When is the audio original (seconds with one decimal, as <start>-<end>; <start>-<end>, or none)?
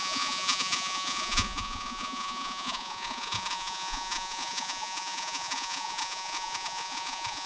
none